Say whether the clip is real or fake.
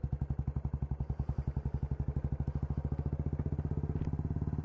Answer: real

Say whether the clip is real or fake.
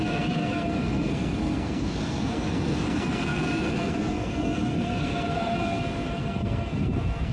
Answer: fake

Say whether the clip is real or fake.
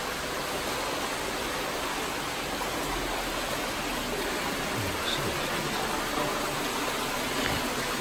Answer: real